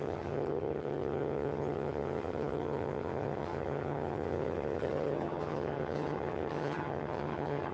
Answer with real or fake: fake